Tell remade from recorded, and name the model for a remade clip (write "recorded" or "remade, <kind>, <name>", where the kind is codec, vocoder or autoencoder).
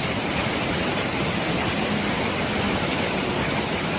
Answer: recorded